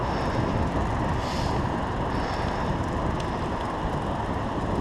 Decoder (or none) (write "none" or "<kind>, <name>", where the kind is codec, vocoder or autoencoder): none